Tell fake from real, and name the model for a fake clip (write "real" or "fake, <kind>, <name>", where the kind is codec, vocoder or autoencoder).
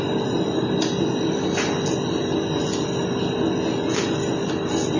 real